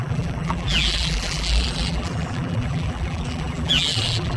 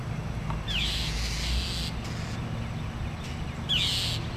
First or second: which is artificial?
first